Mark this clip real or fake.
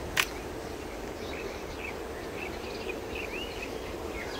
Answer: real